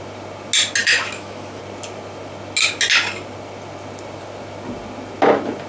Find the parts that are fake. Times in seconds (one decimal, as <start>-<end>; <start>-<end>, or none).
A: 0.8-1.6